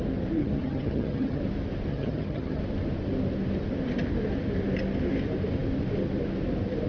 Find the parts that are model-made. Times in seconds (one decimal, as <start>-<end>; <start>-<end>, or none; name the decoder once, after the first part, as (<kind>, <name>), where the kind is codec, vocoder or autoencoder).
0.4-1.4 (vocoder, HiFi-GAN); 1.9-2.6